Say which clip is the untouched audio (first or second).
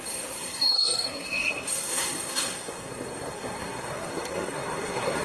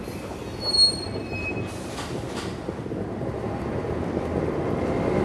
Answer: second